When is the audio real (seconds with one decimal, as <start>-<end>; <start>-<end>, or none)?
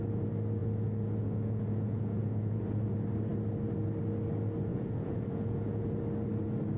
0.0-0.6; 2.8-4.7; 5.9-6.8